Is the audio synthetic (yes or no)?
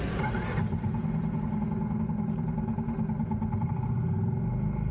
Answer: no